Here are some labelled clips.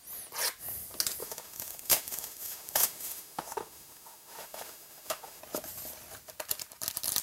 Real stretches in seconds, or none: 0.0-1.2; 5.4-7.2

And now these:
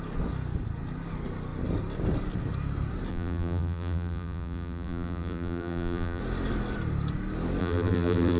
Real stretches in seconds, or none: 0.0-3.1; 6.2-7.6

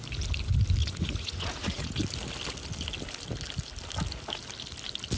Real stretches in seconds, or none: 0.0-0.8; 2.0-5.2

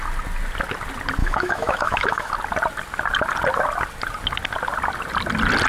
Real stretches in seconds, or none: 0.0-1.2; 2.3-5.7

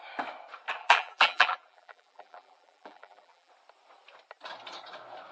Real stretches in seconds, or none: 0.0-0.8; 3.5-5.3

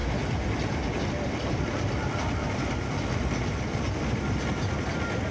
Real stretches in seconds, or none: 3.2-5.3

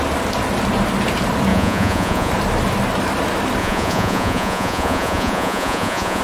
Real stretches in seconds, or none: 0.0-1.5; 2.3-3.6